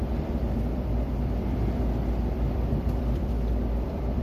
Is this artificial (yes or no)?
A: yes